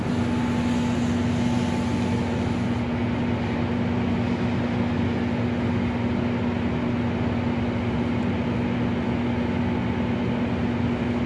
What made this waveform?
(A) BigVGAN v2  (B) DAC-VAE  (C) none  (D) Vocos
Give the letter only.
C